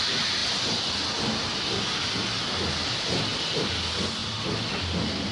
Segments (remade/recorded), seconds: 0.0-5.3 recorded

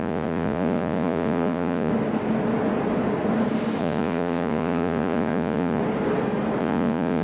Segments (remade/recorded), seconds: 0.0-1.9 remade; 1.9-3.8 recorded; 3.8-5.8 remade; 5.8-6.6 recorded; 6.6-7.2 remade

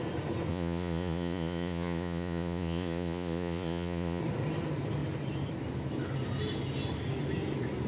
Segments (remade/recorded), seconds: 0.0-0.5 recorded; 0.5-4.2 remade; 4.2-7.9 recorded